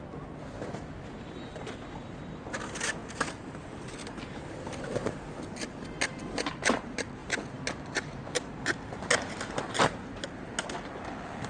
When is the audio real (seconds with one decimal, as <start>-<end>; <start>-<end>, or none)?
0.0-11.5